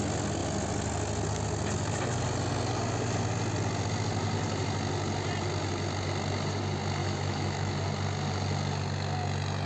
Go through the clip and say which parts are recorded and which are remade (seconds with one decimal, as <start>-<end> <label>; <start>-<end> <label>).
0.0-7.0 recorded; 7.0-7.7 remade; 7.7-9.7 recorded

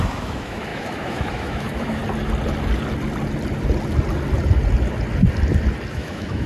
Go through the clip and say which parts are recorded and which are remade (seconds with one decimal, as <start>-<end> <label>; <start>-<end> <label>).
0.0-2.0 remade; 2.0-5.9 recorded; 5.9-6.5 remade

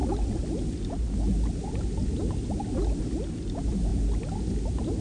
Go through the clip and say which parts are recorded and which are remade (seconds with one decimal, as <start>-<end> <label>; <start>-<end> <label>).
0.0-5.0 recorded

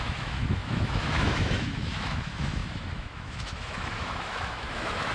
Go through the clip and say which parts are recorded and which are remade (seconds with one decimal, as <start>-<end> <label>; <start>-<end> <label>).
0.0-5.1 remade

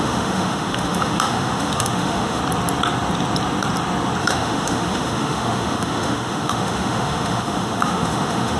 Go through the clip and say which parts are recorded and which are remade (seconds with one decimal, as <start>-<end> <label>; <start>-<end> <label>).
0.0-2.4 remade; 2.4-4.2 recorded; 4.2-8.6 remade

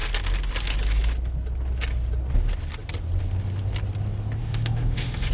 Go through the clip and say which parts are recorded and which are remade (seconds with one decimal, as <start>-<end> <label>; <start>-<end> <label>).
0.0-4.4 recorded; 4.4-5.3 remade

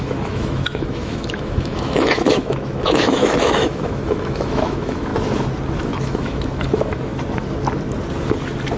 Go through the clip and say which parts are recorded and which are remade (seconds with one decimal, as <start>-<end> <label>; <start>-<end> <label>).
0.0-5.1 remade; 5.1-5.8 recorded; 5.8-7.1 remade; 7.1-8.8 recorded

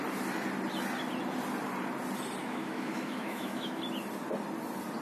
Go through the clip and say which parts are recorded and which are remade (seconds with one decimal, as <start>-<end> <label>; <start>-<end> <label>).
0.0-2.4 recorded; 2.4-3.8 remade; 3.8-5.0 recorded